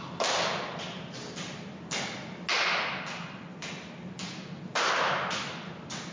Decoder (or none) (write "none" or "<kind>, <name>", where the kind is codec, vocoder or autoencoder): none